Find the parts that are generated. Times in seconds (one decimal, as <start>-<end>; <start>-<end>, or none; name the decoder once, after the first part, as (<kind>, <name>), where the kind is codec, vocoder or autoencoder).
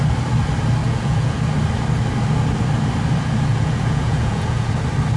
0.8-1.4 (vocoder, Vocos); 3.5-4.7